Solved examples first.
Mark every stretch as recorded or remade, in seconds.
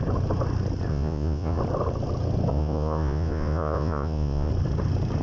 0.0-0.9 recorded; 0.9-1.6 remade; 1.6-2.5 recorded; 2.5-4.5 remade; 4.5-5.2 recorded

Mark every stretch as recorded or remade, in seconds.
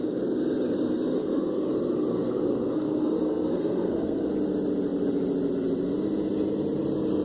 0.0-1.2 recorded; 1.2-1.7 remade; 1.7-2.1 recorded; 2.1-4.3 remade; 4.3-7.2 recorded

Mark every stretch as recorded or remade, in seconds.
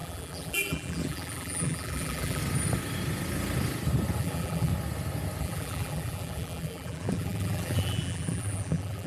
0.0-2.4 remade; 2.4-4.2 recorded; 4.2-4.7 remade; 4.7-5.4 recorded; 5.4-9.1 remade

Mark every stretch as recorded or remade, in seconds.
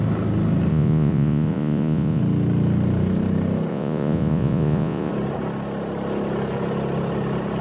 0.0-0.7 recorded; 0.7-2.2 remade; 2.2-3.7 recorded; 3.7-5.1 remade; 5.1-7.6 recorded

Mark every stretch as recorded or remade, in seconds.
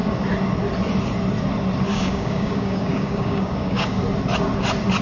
0.0-1.9 recorded; 1.9-4.0 remade; 4.0-5.0 recorded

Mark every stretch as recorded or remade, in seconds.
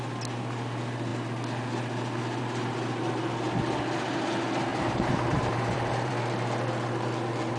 0.0-4.7 recorded; 4.7-6.1 remade; 6.1-7.6 recorded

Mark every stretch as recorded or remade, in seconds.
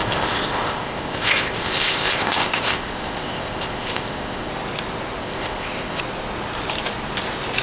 0.0-4.5 remade; 4.5-5.2 recorded; 5.2-6.0 remade; 6.0-7.6 recorded